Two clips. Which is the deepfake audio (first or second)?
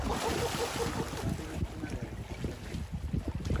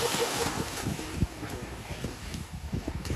second